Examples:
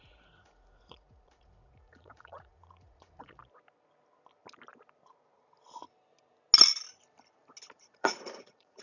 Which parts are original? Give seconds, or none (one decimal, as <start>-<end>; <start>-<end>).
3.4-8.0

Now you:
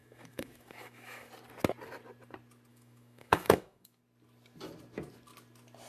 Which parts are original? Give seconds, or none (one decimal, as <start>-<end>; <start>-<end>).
1.3-2.7; 4.0-5.9

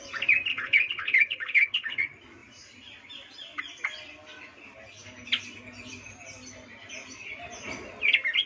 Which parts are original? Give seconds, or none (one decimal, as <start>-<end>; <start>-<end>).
0.0-0.5; 2.0-8.5